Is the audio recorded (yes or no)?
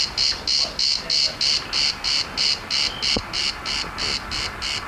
yes